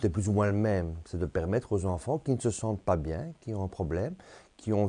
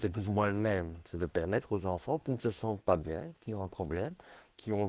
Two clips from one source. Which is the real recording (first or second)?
first